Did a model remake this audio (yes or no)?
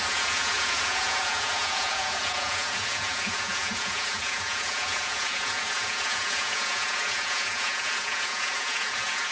yes